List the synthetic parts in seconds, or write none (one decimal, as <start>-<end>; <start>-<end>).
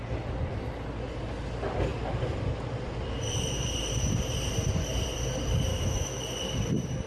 5.7-6.2